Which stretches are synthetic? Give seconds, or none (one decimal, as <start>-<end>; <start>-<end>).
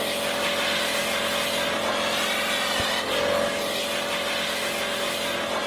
none